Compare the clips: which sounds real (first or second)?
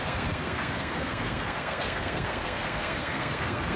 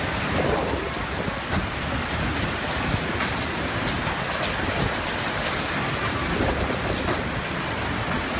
second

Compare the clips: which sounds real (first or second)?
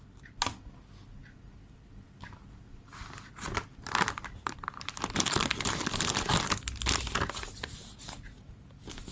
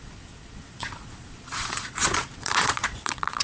first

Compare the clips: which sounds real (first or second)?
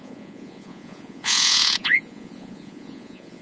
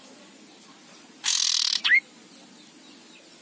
second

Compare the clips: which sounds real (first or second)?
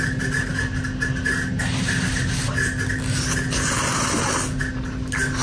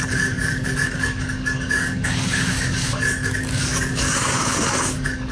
first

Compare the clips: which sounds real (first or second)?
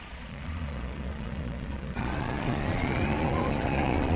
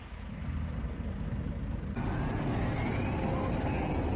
second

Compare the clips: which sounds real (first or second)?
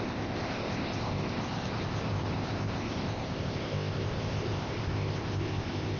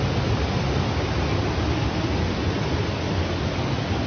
second